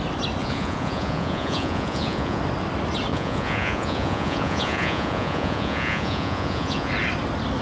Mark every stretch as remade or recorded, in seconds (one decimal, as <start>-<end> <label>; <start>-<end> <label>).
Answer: 0.0-0.4 recorded; 0.4-2.4 remade; 2.4-3.1 recorded; 3.1-6.9 remade; 6.9-7.6 recorded